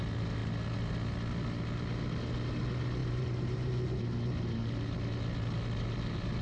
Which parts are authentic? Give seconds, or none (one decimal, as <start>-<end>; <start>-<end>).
0.0-3.0; 3.8-6.4